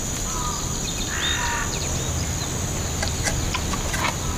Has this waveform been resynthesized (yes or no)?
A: no